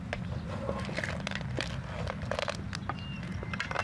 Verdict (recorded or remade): recorded